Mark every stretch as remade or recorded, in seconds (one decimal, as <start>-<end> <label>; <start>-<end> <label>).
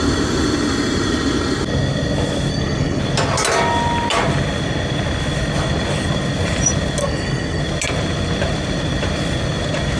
0.0-2.5 recorded; 2.5-3.0 remade; 3.0-7.0 recorded; 7.0-7.6 remade; 7.6-10.0 recorded